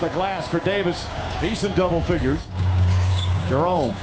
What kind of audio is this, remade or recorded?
remade